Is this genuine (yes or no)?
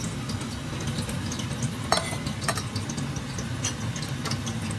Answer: yes